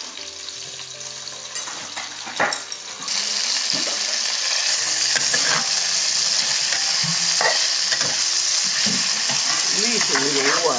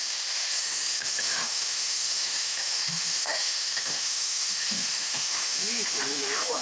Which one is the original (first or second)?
first